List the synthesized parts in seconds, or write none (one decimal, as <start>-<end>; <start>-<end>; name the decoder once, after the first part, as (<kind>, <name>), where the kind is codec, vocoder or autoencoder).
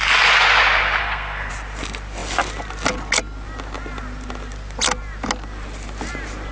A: 1.0-1.5 (codec, SNAC)